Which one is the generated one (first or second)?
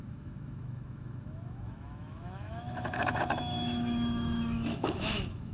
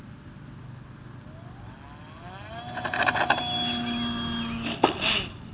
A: first